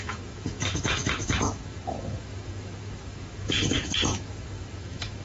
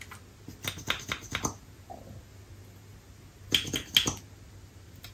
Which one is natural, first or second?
second